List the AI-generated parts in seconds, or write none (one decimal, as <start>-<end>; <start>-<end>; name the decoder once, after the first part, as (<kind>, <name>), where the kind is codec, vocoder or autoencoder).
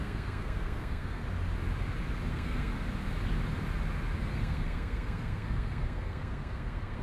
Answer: 0.0-1.2 (codec, SNAC); 2.3-2.7; 4.3-7.0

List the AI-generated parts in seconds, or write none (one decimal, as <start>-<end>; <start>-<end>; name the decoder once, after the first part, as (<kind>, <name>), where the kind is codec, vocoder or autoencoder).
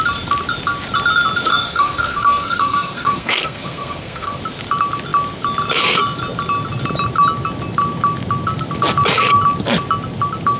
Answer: 1.5-4.4 (codec, SNAC)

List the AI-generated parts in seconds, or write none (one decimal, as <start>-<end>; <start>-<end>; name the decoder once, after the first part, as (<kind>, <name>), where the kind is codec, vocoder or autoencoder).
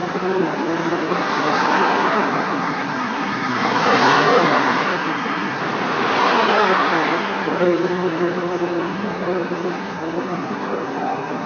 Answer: 0.0-5.6 (codec, SNAC); 6.2-11.5